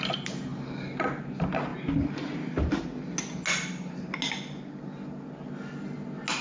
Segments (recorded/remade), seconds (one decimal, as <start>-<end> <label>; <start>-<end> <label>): 0.0-6.4 recorded